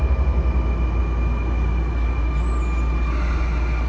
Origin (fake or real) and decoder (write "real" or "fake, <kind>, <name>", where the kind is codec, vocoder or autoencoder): real